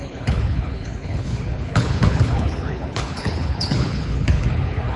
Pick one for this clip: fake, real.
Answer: fake